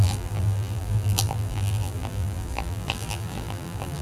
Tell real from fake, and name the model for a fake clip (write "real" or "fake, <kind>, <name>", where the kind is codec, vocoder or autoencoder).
fake, vocoder, BigVGAN v2